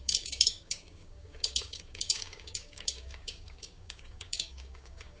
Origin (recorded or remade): remade